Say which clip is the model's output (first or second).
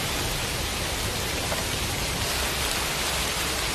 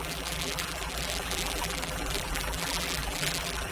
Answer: second